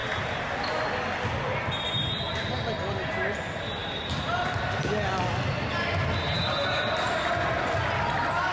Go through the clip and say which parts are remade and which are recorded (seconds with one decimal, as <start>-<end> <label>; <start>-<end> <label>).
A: 0.0-0.7 remade; 0.7-3.8 recorded; 3.8-4.8 remade; 4.8-8.5 recorded

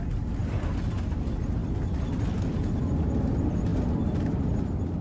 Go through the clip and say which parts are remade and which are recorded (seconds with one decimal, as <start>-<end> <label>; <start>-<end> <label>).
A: 0.0-5.0 recorded